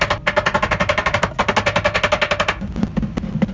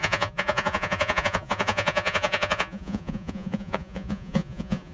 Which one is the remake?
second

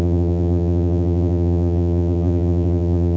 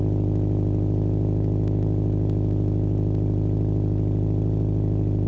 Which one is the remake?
first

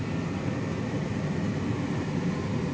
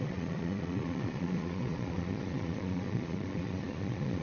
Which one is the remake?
second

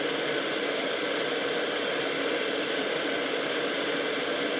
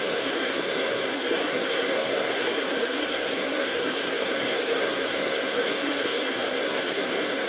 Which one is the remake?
second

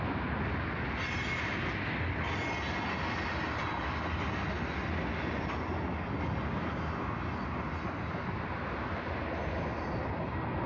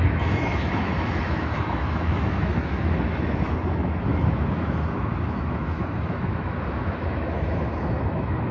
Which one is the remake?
second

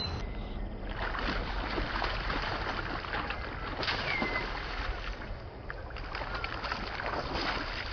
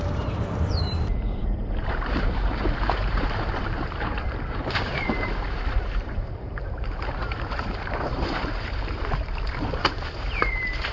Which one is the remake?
second